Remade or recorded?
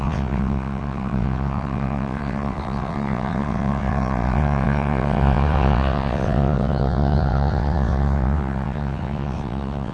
remade